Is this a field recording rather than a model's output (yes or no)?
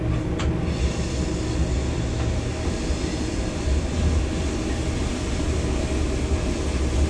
yes